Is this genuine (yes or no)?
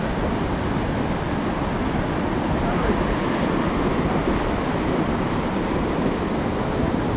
yes